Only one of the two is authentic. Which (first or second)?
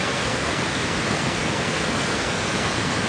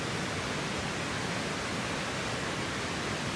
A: second